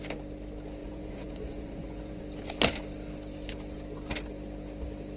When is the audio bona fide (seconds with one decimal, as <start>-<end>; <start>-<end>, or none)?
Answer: 0.0-0.8; 2.2-5.2